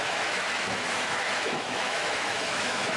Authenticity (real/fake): fake